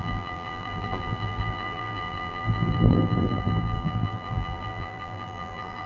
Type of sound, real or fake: fake